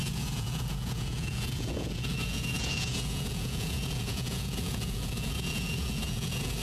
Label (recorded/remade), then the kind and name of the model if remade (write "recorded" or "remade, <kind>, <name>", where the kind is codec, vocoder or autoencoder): remade, vocoder, Vocos